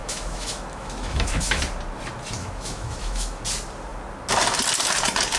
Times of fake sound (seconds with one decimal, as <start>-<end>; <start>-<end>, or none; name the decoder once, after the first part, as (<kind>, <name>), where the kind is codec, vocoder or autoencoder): 0.0-1.6 (autoencoder, DAC-VAE); 2.4-3.4

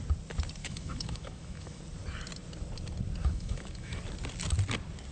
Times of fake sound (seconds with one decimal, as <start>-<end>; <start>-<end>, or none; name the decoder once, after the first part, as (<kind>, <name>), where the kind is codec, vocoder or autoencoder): 0.6-1.8 (autoencoder, DAC-VAE); 3.2-4.0